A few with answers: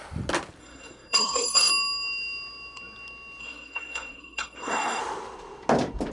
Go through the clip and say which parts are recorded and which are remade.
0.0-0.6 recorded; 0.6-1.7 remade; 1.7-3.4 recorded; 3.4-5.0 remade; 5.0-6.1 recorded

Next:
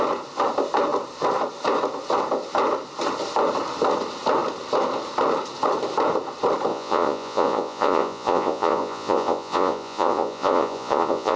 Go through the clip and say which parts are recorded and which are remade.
0.0-6.7 recorded; 6.7-11.4 remade